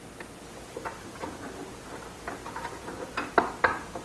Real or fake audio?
real